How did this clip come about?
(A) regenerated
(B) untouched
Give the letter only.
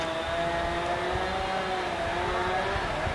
B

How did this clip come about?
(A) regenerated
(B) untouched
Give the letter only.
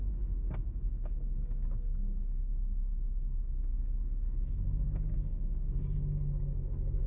A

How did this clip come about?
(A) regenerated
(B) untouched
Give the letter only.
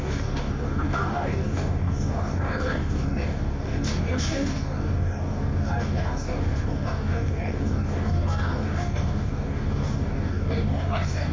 A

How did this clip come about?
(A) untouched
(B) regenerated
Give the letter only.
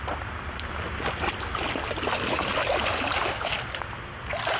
A